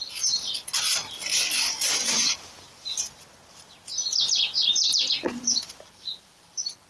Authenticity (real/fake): real